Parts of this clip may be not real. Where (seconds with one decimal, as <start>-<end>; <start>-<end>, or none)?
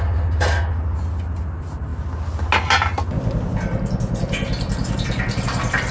none